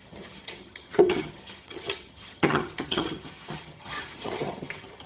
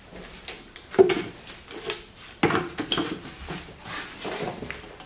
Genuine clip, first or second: second